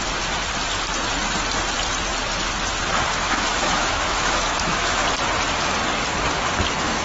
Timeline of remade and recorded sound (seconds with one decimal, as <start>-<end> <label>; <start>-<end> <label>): 0.0-3.1 recorded; 3.1-5.0 remade; 5.0-7.0 recorded